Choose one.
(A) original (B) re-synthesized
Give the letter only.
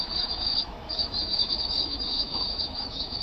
B